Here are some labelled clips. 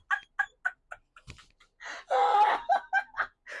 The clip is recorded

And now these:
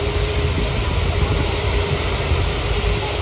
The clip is remade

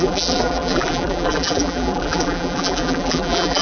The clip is remade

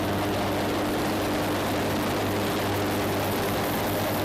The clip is recorded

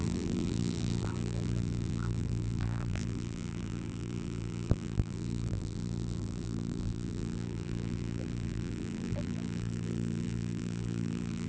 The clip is remade